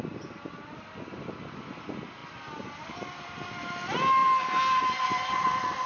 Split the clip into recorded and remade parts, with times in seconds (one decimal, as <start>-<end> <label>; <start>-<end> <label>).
0.0-5.9 recorded